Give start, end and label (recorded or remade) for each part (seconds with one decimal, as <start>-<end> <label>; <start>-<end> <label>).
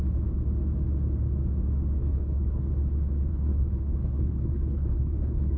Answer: 0.0-2.0 recorded; 2.0-2.7 remade; 2.7-3.3 recorded; 3.3-5.6 remade